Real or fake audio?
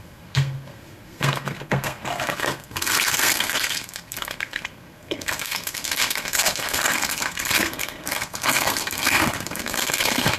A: fake